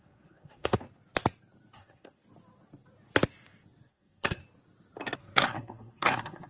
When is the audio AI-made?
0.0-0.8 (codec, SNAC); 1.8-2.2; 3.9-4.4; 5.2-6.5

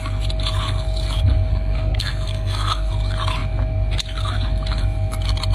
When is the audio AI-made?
1.5-2.9 (codec, SNAC)